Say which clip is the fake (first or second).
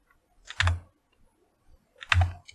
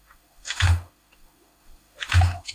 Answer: second